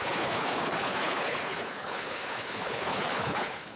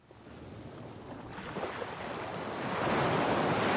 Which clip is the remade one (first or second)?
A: first